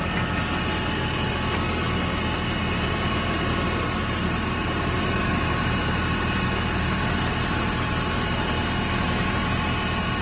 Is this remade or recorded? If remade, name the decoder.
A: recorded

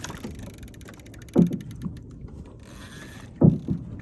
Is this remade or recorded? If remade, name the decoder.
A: recorded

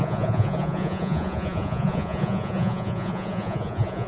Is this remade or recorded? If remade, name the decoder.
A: remade, vocoder, Vocos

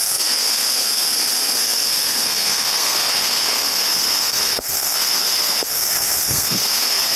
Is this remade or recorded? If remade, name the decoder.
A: remade, codec, SNAC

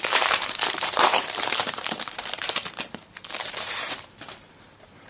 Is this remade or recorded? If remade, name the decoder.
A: remade, vocoder, BigVGAN v2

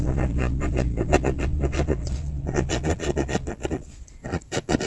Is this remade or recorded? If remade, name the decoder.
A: remade, vocoder, Vocos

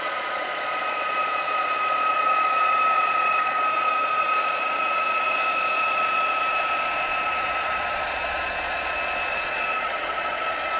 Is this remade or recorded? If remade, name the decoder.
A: remade, vocoder, Vocos